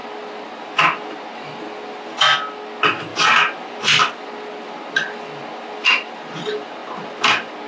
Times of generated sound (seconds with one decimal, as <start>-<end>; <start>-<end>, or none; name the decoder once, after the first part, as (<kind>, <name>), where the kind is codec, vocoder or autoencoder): 3.1-3.8 (vocoder, BigVGAN v2)